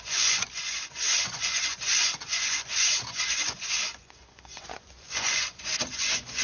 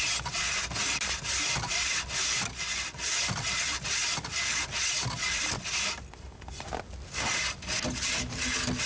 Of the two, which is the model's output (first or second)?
first